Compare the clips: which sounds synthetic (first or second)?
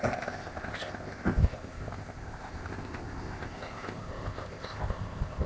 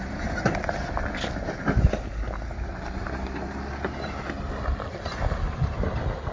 first